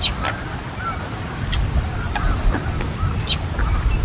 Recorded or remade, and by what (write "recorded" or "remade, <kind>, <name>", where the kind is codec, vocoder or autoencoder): recorded